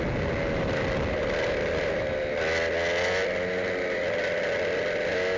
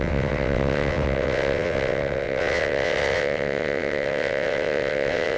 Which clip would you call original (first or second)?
first